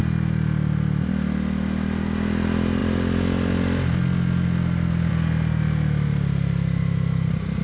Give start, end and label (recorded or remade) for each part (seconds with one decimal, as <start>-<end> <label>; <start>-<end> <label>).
0.0-7.6 recorded